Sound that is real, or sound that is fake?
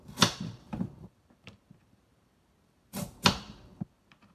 fake